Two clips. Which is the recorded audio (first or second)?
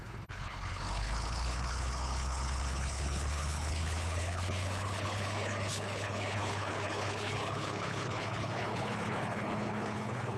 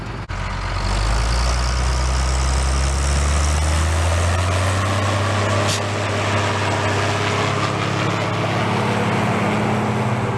second